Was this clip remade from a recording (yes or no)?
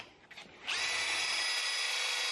no